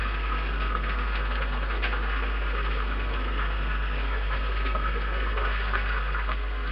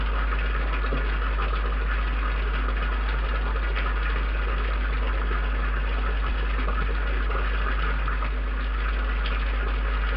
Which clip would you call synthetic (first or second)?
first